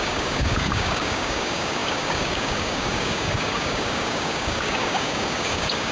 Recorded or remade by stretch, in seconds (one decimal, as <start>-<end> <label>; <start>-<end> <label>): 0.0-5.9 remade

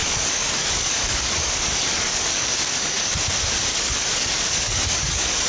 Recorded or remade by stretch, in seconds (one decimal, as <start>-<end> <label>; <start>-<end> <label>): 0.0-3.2 remade; 3.2-3.7 recorded; 3.7-5.5 remade

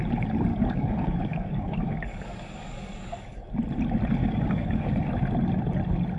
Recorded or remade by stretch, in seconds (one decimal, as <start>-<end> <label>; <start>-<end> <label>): 0.0-0.5 recorded; 0.5-3.5 remade; 3.5-4.2 recorded; 4.2-4.9 remade; 4.9-6.2 recorded

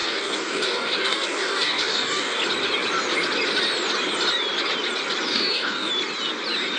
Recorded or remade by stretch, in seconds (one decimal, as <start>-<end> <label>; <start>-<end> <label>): 0.0-2.4 remade; 2.4-5.3 recorded; 5.3-5.9 remade; 5.9-6.8 recorded